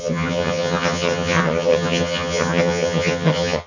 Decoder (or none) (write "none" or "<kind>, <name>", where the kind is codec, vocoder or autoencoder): vocoder, HiFi-GAN